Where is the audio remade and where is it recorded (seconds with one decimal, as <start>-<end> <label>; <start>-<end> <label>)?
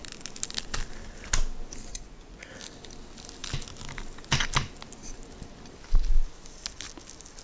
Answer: 0.0-1.9 recorded; 1.9-2.5 remade; 2.5-7.4 recorded